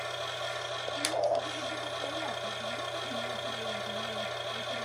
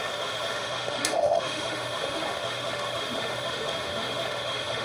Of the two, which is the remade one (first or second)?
second